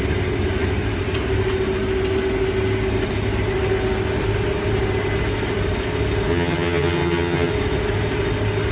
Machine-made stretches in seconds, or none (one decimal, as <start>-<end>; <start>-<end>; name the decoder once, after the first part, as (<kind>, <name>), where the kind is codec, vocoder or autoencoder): 6.3-7.5 (vocoder, HiFi-GAN)